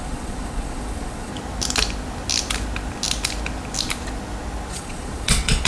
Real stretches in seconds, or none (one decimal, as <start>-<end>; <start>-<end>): 1.3-4.7